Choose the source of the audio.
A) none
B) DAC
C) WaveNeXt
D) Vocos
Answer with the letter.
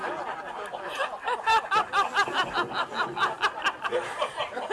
A